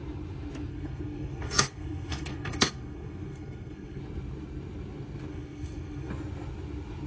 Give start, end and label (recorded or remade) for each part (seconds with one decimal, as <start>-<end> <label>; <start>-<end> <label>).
0.0-0.7 recorded; 0.7-4.0 remade; 4.0-5.3 recorded; 5.3-6.1 remade; 6.1-7.1 recorded